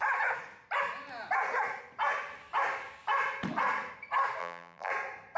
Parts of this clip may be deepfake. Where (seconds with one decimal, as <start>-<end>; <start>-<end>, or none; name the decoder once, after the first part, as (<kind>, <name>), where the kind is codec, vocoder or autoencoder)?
4.4-4.9 (vocoder, BigVGAN v2)